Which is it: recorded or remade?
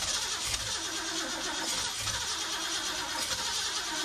recorded